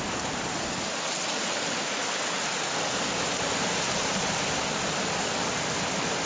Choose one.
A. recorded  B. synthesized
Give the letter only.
A